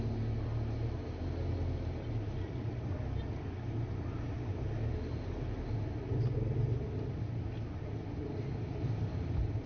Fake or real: real